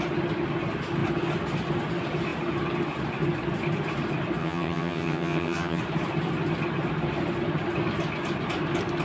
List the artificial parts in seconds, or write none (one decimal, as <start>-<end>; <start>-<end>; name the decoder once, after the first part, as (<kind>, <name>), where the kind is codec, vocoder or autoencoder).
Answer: 4.4-5.8 (vocoder, HiFi-GAN)